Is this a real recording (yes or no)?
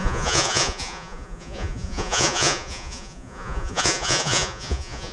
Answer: no